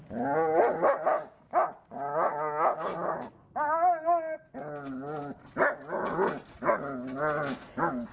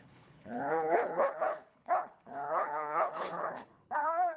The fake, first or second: second